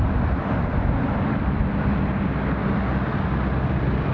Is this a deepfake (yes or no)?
no